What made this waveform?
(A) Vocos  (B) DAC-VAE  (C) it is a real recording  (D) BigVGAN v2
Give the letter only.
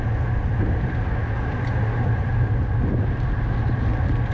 C